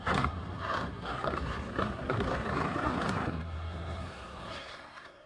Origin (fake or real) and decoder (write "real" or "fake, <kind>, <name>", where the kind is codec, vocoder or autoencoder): fake, codec, SNAC